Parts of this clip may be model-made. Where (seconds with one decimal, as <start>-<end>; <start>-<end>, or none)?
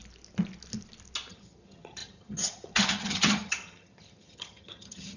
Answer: 1.3-5.2